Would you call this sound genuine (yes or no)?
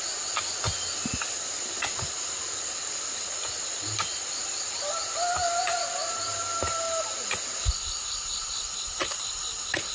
yes